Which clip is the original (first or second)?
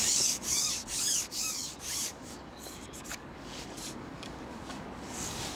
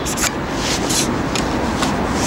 second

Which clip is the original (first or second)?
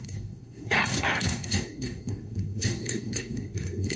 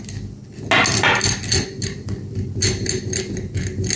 second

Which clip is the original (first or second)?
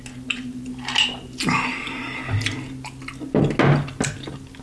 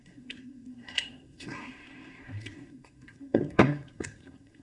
first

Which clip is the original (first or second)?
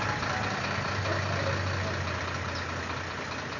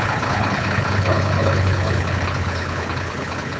first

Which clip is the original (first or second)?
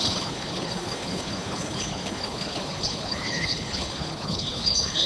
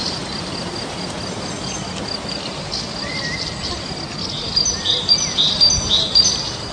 second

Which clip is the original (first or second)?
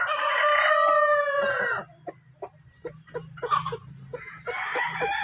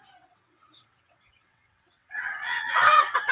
first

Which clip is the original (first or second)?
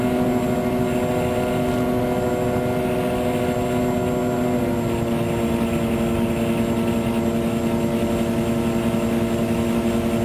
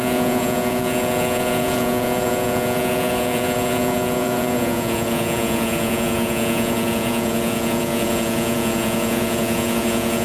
first